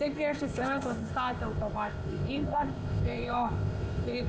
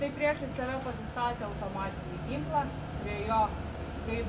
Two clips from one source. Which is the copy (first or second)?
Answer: first